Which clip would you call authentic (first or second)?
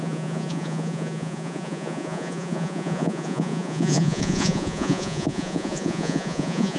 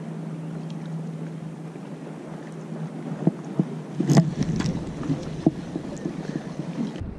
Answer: second